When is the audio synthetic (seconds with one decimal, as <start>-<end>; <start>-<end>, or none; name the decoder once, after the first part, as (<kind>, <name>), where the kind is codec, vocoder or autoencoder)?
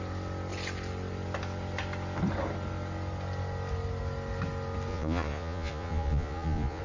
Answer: 4.9-6.8 (vocoder, Vocos)